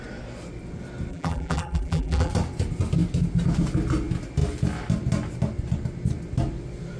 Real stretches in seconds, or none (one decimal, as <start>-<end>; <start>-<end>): 0.0-1.1; 2.3-7.0